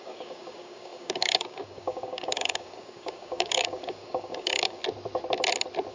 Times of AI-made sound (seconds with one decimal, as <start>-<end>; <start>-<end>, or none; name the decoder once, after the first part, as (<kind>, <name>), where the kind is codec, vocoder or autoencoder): 0.0-4.8 (codec, DAC)